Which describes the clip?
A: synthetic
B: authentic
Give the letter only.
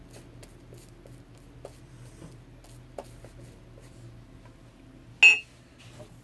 B